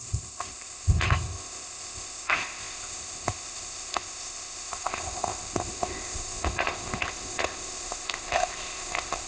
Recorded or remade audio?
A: remade